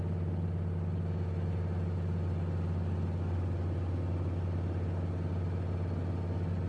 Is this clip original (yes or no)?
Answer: yes